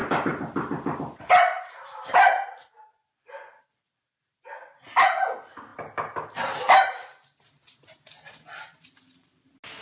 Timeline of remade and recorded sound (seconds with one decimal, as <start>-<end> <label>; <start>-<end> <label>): 0.0-2.5 remade; 2.5-9.8 recorded